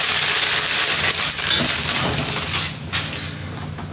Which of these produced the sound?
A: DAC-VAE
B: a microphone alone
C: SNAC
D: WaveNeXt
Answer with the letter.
B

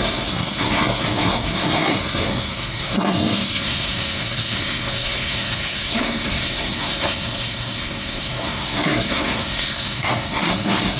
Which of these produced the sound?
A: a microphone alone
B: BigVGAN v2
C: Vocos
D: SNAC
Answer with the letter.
D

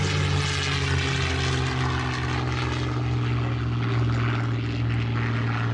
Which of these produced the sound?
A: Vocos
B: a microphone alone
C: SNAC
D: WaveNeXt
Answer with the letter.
B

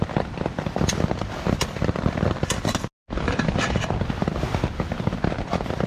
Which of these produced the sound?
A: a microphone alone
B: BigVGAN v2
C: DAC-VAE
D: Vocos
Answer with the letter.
A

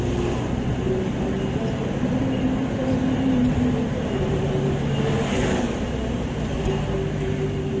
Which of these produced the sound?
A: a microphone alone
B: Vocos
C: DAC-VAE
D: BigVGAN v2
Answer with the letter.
A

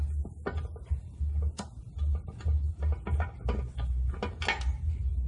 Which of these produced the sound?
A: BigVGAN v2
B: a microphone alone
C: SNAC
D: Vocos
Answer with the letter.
B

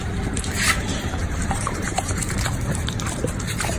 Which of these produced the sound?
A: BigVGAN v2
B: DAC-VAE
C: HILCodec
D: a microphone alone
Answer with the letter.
A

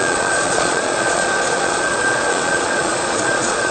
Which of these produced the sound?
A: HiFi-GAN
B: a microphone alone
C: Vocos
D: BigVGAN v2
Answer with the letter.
C